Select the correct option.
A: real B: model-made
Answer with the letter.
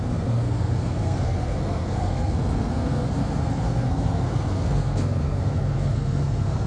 B